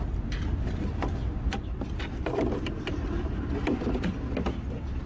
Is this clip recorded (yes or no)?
yes